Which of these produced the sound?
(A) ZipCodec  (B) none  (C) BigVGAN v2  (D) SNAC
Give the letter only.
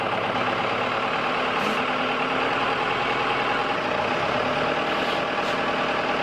B